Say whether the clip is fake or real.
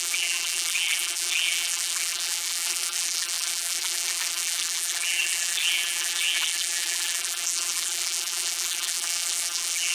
fake